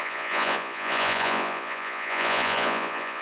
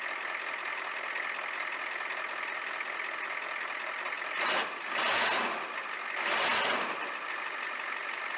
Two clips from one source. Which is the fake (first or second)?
first